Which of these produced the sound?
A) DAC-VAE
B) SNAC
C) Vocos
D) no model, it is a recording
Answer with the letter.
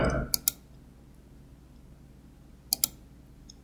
D